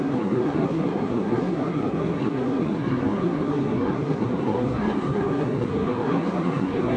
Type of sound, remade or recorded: remade